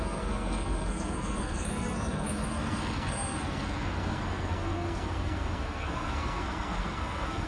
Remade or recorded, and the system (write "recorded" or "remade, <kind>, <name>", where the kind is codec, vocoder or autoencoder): remade, codec, SNAC